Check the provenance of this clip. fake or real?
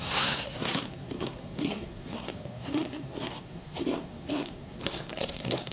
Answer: fake